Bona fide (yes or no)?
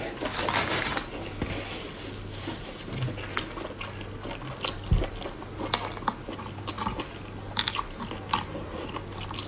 yes